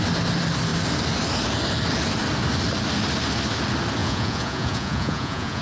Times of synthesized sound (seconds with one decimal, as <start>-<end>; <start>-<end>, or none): 4.0-5.6